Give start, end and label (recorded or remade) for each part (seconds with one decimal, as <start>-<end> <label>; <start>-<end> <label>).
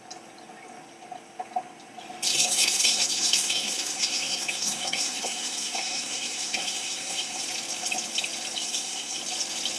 0.0-2.3 recorded; 2.3-7.4 remade; 7.4-8.6 recorded; 8.6-9.2 remade; 9.2-9.8 recorded